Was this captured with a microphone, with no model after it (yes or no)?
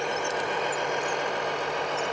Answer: yes